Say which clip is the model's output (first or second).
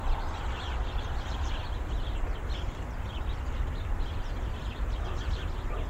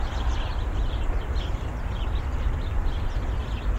first